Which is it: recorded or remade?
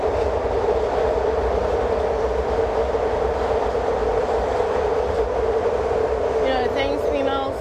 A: recorded